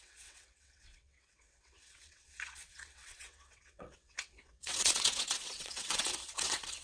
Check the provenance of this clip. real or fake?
fake